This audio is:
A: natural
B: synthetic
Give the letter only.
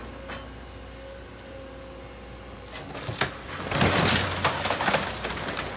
A